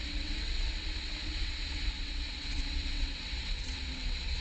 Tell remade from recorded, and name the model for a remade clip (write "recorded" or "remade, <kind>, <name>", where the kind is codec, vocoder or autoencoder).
remade, vocoder, WaveNeXt